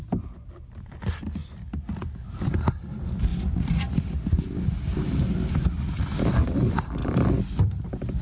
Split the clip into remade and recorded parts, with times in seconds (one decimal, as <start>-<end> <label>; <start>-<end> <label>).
0.0-8.2 recorded